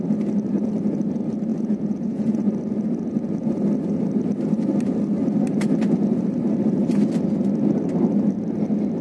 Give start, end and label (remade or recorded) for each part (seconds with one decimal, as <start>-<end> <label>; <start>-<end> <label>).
0.0-1.5 recorded; 1.5-2.5 remade; 2.5-9.0 recorded